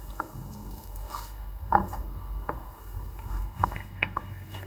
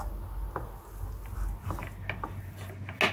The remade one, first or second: first